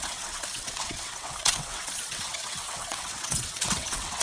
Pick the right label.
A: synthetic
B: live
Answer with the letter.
A